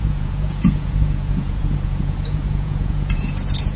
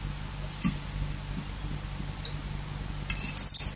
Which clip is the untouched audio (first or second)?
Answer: second